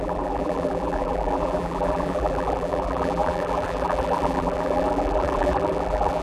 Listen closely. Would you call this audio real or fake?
fake